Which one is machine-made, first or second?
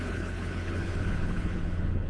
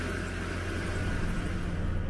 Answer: first